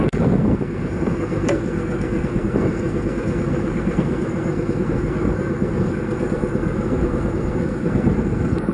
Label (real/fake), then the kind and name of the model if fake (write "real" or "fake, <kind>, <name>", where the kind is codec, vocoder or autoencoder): fake, codec, SNAC